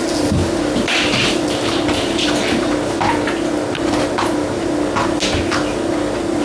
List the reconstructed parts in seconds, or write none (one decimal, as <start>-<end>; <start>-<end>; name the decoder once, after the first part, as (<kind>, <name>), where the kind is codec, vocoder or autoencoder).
none